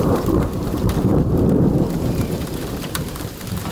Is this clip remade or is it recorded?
remade